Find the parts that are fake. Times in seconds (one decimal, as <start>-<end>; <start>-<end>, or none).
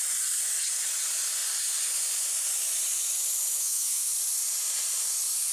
3.5-4.1